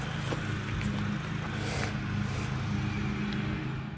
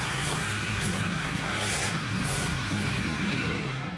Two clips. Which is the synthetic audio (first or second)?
second